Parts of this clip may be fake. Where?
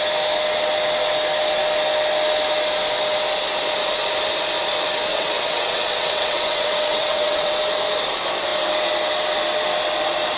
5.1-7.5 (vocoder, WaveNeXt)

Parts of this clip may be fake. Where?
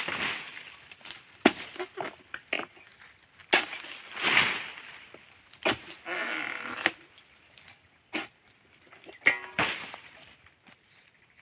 none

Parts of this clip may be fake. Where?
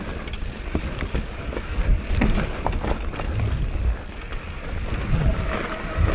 none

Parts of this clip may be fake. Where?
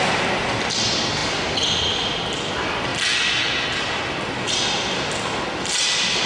none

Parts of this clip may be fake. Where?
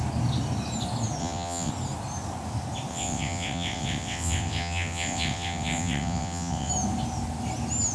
1.2-1.7 (vocoder, WaveNeXt); 2.9-6.7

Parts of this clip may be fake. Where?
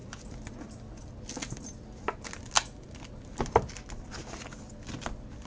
none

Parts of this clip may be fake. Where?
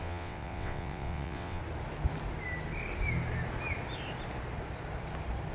0.0-1.6 (vocoder, WaveNeXt)